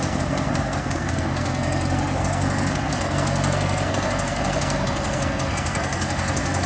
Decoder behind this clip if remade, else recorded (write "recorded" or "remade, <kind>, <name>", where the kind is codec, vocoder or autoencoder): remade, codec, SNAC